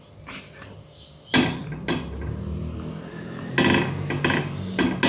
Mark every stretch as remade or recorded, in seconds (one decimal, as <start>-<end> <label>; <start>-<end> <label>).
0.0-5.1 recorded